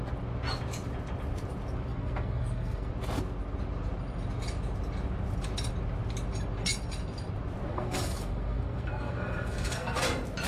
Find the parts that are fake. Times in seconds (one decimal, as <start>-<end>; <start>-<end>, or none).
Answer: 1.9-2.9; 7.7-10.0